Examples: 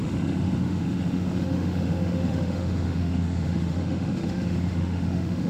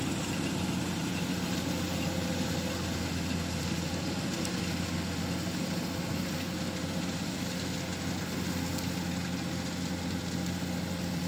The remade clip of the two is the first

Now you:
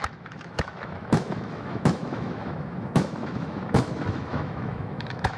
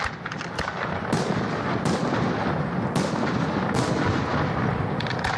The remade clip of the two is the first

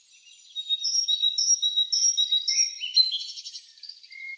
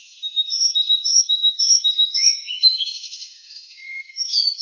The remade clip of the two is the second